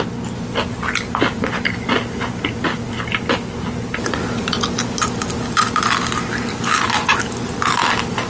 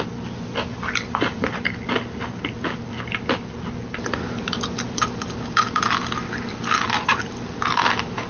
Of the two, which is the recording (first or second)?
first